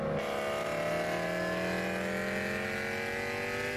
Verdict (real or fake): real